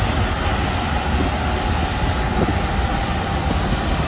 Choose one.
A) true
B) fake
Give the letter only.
A